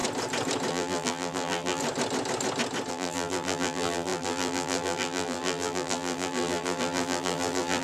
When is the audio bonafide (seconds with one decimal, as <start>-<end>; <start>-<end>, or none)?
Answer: 0.0-0.7; 1.8-2.9